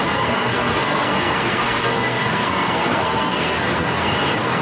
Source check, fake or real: fake